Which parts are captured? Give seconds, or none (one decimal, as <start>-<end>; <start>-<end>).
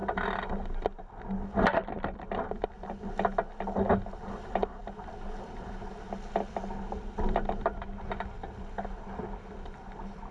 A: 0.0-10.3